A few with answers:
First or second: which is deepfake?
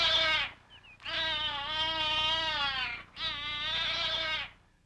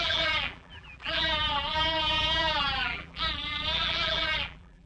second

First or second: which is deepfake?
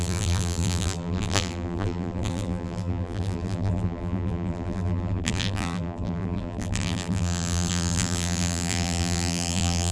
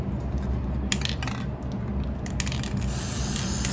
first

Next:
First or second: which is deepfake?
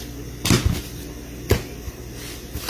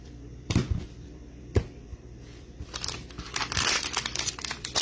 second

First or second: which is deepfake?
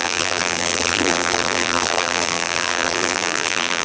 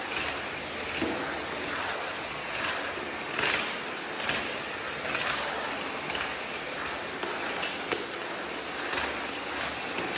first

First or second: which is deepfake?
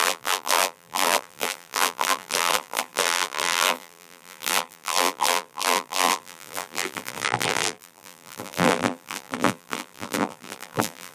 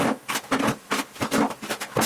first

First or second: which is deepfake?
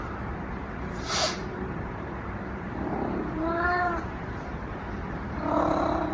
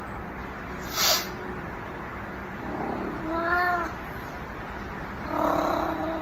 first